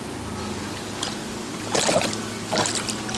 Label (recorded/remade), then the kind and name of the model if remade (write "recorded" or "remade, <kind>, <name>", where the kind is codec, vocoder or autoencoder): recorded